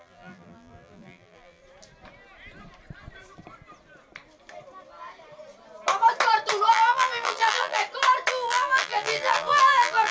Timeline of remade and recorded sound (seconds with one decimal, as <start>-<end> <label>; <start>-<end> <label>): 0.0-1.6 remade; 1.6-6.7 recorded; 6.7-7.8 remade; 7.8-8.3 recorded; 8.3-10.1 remade